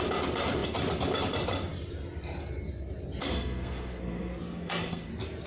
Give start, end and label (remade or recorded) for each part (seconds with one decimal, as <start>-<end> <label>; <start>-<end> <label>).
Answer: 0.0-3.2 recorded; 3.2-5.1 remade; 5.1-5.5 recorded